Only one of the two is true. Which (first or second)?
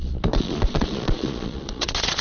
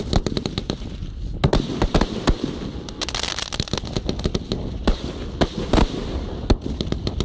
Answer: second